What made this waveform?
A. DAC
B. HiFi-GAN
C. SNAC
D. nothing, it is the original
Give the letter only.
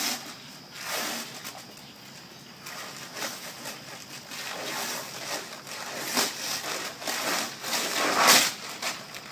D